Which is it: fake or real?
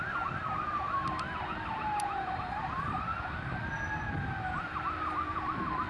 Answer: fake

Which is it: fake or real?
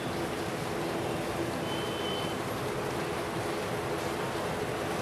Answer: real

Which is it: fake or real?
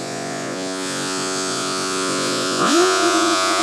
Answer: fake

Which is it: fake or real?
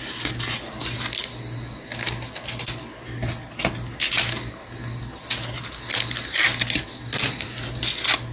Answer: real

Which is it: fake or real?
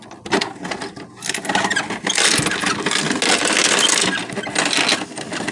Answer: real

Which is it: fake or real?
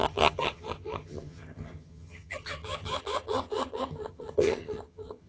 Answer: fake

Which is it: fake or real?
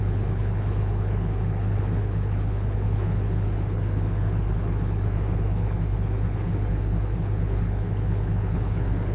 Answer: fake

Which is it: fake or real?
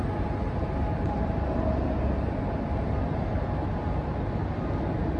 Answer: real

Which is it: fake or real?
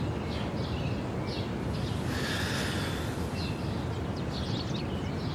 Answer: real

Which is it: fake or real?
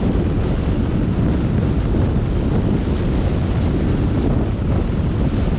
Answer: real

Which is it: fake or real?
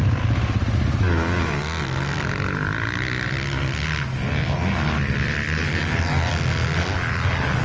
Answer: real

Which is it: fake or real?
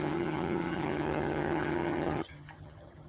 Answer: fake